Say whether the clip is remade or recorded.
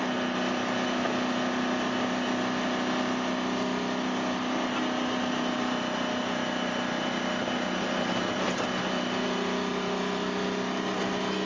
recorded